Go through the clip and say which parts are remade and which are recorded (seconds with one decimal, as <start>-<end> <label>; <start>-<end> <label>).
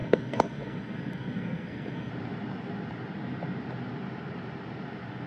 0.0-2.1 remade; 2.1-5.3 recorded